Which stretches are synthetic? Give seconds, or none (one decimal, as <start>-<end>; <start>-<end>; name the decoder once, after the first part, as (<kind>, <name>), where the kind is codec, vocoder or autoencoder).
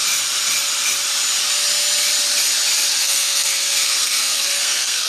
2.9-5.1 (codec, SNAC)